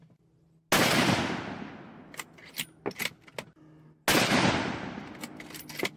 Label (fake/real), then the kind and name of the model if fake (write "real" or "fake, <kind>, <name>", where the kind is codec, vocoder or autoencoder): real